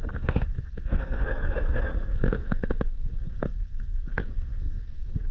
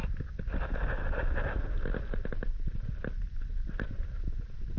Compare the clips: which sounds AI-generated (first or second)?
first